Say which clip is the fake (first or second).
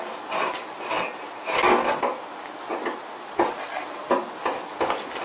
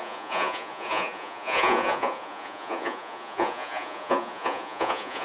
second